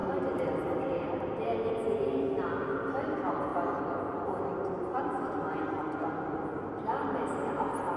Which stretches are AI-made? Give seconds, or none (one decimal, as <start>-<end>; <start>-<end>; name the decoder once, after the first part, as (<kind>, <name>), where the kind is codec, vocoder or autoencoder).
0.0-0.8 (vocoder, BigVGAN v2)